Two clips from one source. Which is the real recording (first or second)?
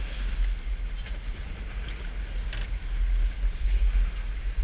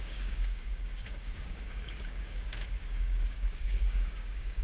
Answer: first